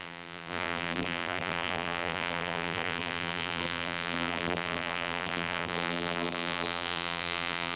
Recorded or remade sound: remade